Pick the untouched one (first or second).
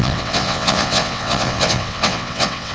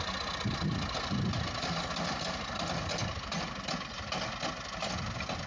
second